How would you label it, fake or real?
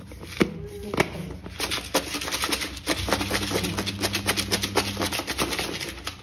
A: real